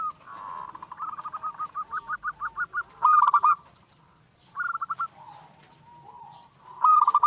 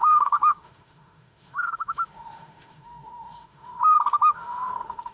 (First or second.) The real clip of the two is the first